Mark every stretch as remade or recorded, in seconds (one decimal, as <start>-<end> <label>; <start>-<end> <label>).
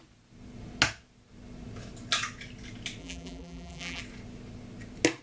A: 0.0-3.0 recorded; 3.0-4.0 remade; 4.0-5.2 recorded